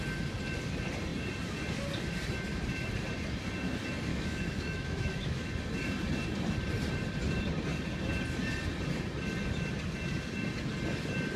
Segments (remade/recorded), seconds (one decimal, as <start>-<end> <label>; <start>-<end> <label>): 0.0-4.1 recorded; 4.1-5.5 remade; 5.5-11.4 recorded